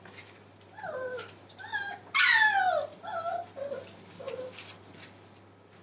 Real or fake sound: real